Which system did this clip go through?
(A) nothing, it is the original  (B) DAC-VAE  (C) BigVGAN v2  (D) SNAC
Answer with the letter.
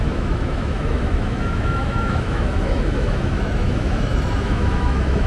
B